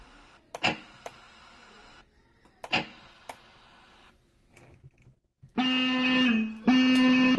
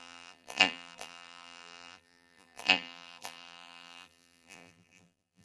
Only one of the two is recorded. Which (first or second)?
first